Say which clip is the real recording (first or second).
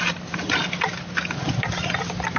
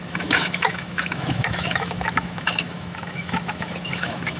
first